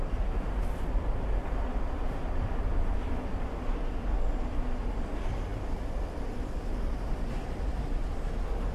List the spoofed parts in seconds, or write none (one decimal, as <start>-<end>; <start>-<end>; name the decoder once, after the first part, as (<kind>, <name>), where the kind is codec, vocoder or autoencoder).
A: none